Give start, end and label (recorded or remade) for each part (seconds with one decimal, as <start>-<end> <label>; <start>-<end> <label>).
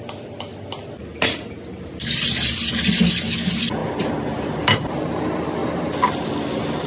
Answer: 0.0-6.9 recorded